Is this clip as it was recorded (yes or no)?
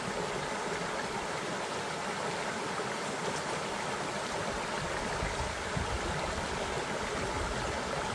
yes